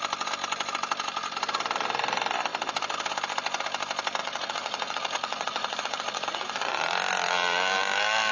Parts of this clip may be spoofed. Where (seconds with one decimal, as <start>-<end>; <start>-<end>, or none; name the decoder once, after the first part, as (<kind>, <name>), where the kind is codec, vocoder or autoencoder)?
4.2-6.8 (vocoder, Vocos)